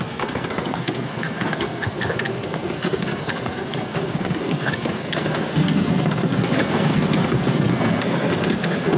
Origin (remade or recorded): remade